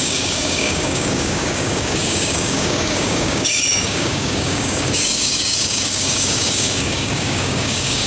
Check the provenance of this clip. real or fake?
fake